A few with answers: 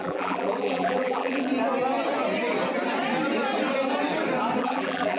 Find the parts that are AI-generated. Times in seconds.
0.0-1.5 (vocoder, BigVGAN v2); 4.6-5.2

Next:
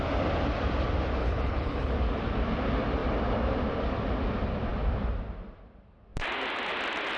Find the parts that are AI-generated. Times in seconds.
1.2-1.9 (codec, HILCodec)

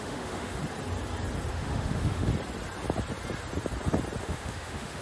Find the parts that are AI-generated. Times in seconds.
0.0-0.6 (autoencoder, DAC-VAE); 1.5-2.3; 4.2-5.0

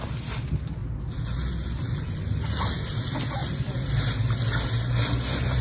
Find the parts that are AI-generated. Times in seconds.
none

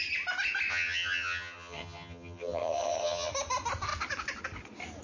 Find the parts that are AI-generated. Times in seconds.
0.7-3.3 (vocoder, HiFi-GAN)

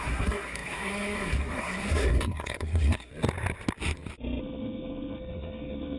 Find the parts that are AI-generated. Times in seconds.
0.0-3.1 (codec, SNAC); 4.4-6.0

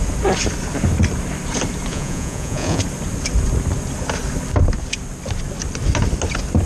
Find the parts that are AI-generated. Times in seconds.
1.9-2.8 (vocoder, Vocos)